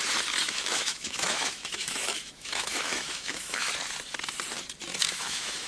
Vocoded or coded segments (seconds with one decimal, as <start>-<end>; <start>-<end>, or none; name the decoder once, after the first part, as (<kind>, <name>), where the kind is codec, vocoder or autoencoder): 0.4-3.7 (autoencoder, DAC-VAE); 5.0-5.7